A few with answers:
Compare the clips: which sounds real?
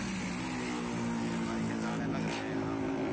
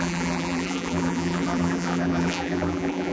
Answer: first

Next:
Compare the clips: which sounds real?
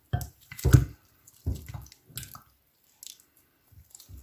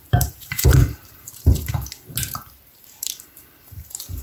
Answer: first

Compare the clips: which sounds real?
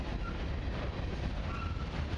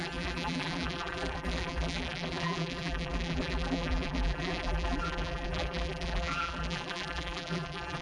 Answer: first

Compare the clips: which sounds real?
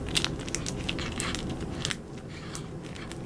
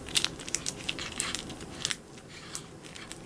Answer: first